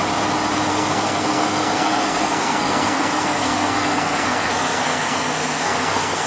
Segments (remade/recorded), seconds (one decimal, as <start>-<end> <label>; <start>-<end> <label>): 0.0-0.7 recorded; 0.7-6.3 remade